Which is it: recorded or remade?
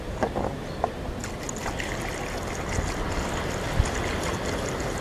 recorded